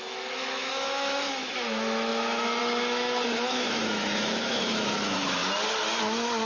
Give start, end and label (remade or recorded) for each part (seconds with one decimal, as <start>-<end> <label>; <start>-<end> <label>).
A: 0.0-5.4 remade; 5.4-6.5 recorded